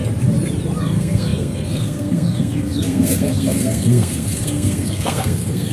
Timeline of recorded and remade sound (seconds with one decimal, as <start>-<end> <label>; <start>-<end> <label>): 0.0-0.8 recorded; 0.8-5.7 remade